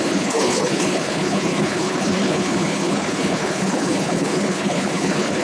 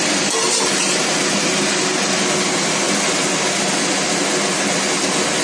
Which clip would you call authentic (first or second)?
second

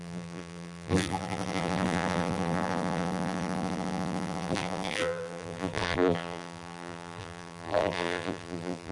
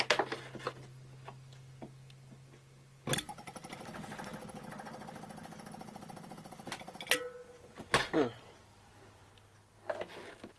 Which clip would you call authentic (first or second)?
second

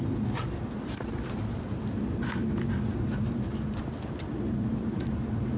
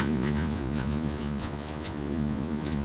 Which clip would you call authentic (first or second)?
first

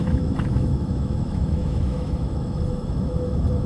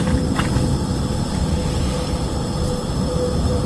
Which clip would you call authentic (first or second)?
second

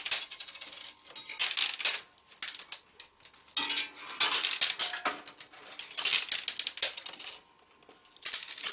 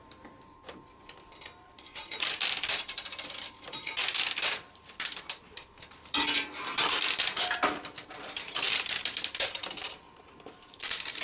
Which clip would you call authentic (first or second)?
first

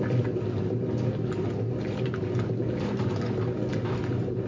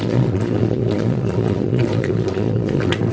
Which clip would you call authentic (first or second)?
first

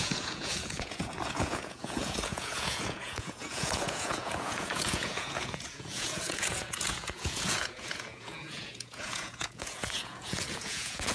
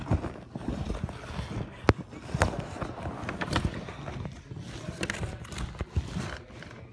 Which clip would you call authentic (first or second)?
second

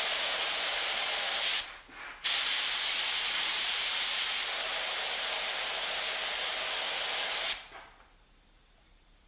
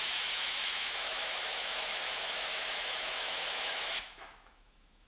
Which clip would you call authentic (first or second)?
first